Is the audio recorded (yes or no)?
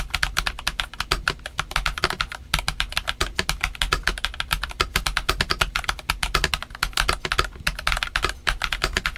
yes